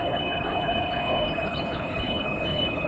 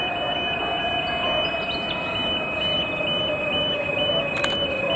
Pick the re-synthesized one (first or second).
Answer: first